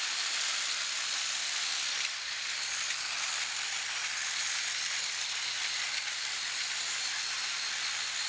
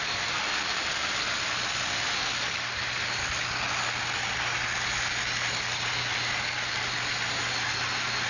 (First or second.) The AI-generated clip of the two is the first